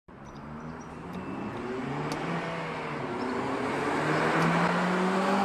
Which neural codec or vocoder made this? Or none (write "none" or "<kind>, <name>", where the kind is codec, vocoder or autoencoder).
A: none